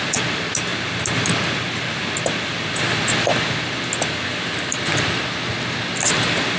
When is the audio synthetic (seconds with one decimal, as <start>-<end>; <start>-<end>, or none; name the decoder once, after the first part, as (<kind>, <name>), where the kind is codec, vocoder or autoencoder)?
4.3-5.2 (vocoder, BigVGAN v2)